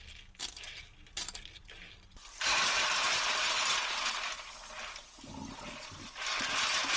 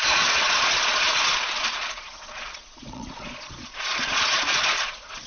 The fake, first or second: second